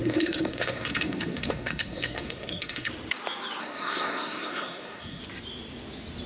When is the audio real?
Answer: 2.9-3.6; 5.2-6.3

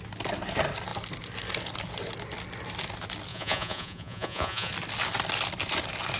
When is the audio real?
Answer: 0.0-3.3; 4.7-6.2

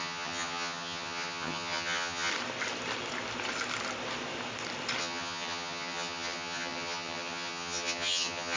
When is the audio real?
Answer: 2.3-5.0